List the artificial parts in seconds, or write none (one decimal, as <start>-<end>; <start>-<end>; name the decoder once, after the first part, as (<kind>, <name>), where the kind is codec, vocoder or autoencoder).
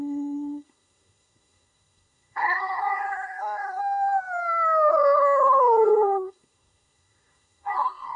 0.0-3.8 (codec, SNAC); 4.9-8.2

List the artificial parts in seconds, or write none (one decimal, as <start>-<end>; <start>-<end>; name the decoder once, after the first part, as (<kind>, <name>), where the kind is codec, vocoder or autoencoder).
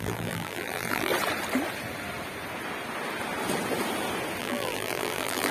0.0-1.1 (vocoder, BigVGAN v2); 4.4-5.5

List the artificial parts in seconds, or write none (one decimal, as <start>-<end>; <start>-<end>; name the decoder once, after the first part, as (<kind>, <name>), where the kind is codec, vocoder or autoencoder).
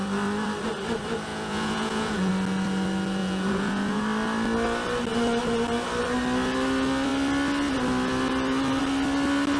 1.3-2.3 (vocoder, Vocos); 3.2-4.0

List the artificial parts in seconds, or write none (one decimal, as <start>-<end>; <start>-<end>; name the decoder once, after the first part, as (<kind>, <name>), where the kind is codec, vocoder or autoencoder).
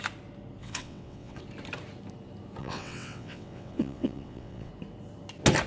0.6-1.4 (vocoder, WaveNeXt); 2.6-4.7